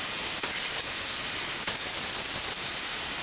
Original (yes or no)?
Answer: yes